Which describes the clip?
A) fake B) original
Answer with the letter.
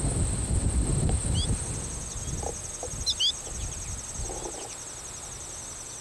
B